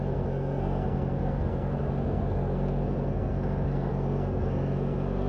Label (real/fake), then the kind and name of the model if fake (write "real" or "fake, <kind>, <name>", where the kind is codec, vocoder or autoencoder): fake, codec, SNAC